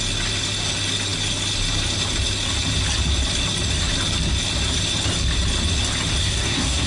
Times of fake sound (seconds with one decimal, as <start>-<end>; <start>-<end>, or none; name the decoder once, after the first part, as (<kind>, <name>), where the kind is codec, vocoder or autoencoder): 6.2-6.9 (codec, SNAC)

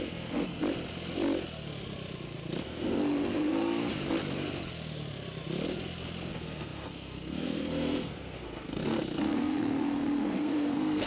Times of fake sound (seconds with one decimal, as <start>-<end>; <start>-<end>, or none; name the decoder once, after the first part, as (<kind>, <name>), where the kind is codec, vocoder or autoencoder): 0.0-0.6 (codec, SNAC); 2.6-3.9; 6.3-11.1

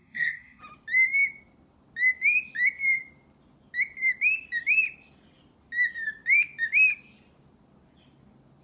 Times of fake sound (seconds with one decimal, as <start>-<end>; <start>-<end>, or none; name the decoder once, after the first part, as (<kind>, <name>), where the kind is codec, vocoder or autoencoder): 0.0-0.6 (codec, SNAC)

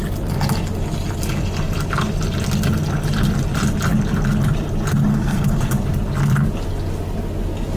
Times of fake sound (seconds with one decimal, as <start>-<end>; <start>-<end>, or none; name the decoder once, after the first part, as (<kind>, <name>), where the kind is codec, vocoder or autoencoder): 5.1-5.7 (codec, SNAC)

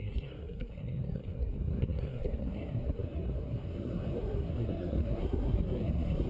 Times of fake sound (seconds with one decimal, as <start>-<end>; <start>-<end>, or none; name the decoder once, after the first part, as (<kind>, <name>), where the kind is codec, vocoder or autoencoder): 0.0-6.3 (codec, SNAC)

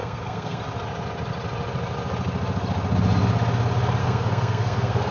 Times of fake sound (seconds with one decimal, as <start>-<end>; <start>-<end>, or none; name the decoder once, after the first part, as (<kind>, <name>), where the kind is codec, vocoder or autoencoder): 0.0-0.6 (codec, SNAC); 4.0-5.1

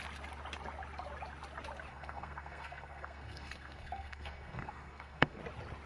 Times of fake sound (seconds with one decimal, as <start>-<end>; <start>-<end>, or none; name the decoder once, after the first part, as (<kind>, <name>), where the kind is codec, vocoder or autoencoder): 1.9-5.4 (codec, SNAC)

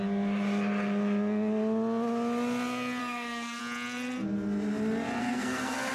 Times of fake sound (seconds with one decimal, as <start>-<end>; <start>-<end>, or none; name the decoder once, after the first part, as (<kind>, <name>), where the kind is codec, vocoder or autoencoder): 3.0-3.6 (codec, SNAC); 5.2-5.9